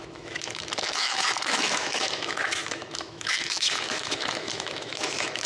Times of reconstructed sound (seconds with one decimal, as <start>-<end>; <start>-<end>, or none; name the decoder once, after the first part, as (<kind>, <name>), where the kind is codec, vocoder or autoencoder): 0.0-5.5 (autoencoder, DAC-VAE)